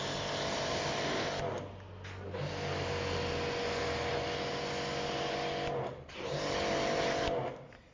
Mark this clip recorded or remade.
recorded